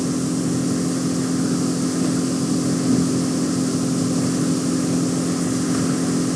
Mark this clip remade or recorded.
recorded